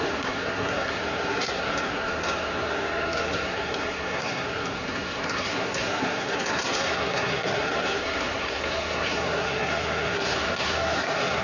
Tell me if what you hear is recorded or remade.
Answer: remade